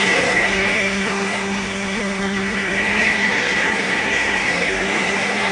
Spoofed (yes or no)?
yes